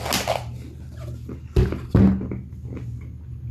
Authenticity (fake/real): real